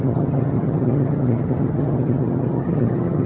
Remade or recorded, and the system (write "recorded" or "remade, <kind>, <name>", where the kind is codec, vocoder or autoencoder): remade, vocoder, HiFi-GAN